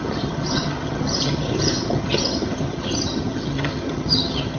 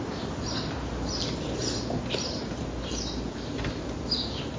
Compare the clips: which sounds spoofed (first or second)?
first